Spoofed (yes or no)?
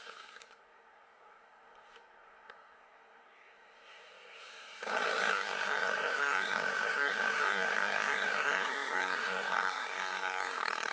yes